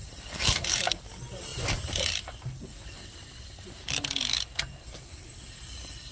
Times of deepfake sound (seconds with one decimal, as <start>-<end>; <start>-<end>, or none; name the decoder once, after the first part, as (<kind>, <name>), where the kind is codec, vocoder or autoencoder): 0.0-1.0 (vocoder, BigVGAN v2); 1.5-2.2